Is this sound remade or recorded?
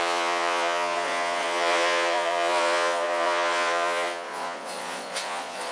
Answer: remade